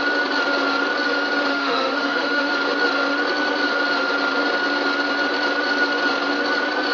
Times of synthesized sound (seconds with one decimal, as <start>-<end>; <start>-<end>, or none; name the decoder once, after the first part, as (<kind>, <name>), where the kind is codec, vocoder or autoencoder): 1.5-2.5 (autoencoder, DAC-VAE)